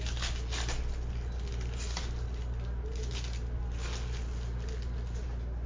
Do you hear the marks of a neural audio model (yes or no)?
no